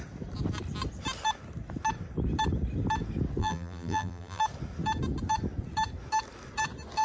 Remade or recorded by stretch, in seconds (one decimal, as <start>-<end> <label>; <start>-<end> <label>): 0.0-3.4 recorded; 3.4-4.4 remade; 4.4-7.0 recorded